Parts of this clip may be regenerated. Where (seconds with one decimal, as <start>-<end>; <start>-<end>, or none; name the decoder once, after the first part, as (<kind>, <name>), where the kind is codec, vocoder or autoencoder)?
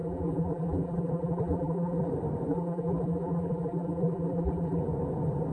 0.0-2.1 (vocoder, BigVGAN v2); 2.5-4.8